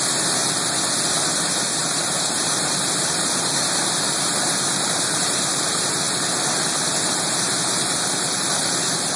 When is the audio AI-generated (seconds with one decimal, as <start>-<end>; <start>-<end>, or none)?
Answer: 1.3-6.1